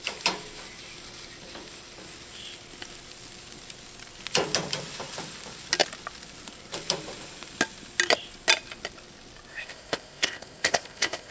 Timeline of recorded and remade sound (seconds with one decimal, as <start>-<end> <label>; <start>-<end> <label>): 0.0-9.5 recorded; 9.5-11.3 remade